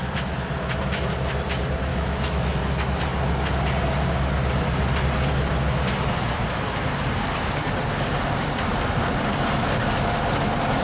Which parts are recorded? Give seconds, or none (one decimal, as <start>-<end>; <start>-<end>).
0.0-1.9; 2.6-10.8